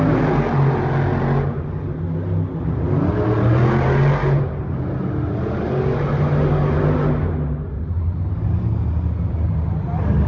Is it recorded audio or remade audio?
recorded